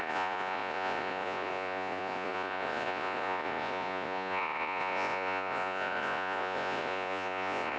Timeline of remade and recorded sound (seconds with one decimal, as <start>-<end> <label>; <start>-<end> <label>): 0.0-7.8 remade